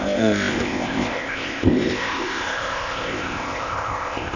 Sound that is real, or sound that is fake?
fake